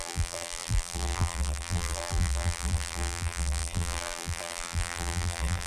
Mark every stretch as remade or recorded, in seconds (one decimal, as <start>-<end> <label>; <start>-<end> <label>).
0.0-5.7 remade